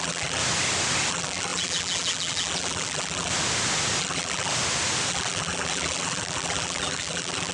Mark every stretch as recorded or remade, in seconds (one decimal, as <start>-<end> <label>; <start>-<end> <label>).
0.0-0.4 remade; 0.4-1.1 recorded; 1.1-3.3 remade; 3.3-4.0 recorded; 4.0-4.5 remade; 4.5-5.1 recorded; 5.1-7.5 remade